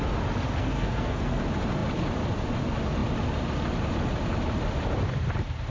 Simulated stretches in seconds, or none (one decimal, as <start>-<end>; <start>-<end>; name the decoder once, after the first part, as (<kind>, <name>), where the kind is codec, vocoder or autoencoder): 0.6-1.4 (codec, SNAC)